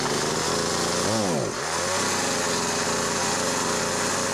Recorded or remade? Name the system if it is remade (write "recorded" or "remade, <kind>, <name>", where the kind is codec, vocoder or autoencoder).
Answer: recorded